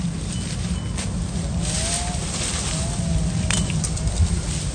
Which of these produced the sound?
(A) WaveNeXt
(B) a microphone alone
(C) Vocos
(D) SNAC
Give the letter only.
B